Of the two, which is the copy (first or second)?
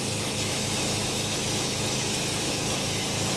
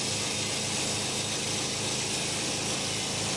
first